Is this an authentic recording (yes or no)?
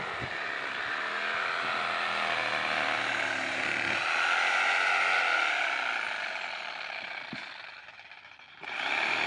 yes